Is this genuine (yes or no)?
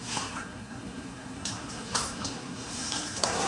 no